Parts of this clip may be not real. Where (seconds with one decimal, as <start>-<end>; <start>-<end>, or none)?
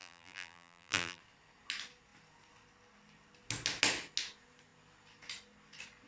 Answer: 0.0-1.2